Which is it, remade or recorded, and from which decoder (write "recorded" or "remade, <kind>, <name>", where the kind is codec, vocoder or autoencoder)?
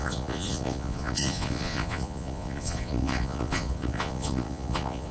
remade, vocoder, Vocos